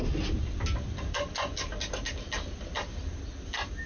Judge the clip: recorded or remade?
recorded